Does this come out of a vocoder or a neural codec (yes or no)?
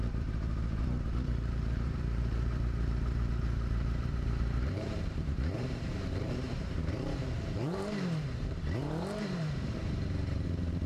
yes